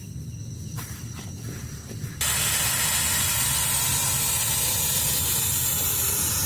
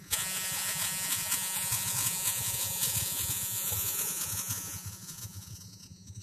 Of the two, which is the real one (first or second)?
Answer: first